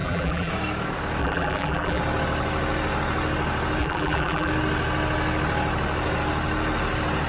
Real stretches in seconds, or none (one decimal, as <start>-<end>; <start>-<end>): 0.5-1.2; 2.0-3.8; 4.5-7.3